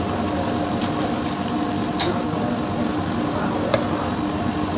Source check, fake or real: real